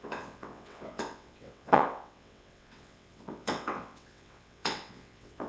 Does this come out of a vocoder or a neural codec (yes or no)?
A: yes